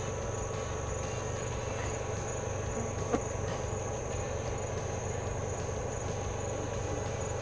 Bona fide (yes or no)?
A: yes